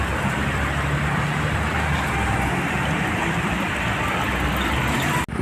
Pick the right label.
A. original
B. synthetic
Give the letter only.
A